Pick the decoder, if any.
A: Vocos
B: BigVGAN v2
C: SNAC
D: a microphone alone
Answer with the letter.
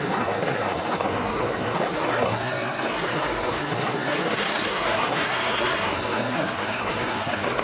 C